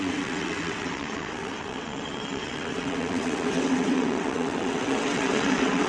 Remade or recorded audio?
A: remade